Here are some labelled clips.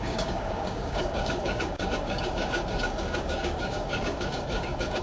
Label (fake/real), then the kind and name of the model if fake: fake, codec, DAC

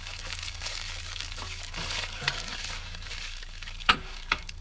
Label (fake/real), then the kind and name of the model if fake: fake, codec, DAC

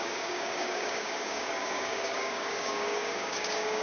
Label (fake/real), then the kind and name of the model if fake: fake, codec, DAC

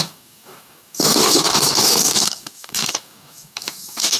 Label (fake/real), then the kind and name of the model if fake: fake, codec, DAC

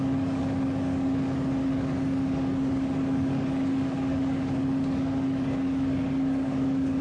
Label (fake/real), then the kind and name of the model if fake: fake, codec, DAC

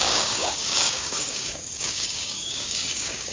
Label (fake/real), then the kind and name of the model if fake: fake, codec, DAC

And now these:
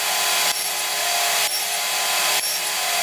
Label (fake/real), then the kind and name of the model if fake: real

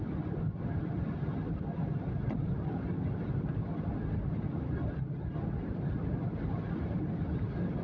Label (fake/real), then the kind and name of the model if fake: real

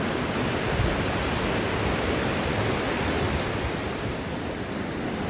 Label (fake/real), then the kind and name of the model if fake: real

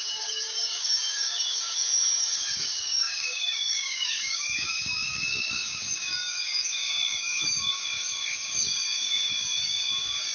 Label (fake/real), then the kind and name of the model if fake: fake, codec, DAC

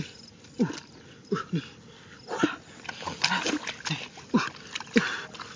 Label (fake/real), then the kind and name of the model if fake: real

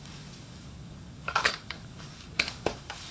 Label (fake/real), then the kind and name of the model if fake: fake, codec, DAC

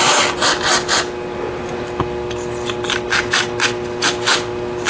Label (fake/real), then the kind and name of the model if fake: real